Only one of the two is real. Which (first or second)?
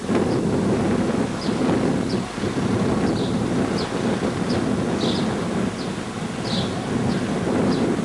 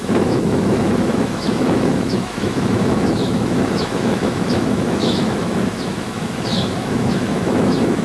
first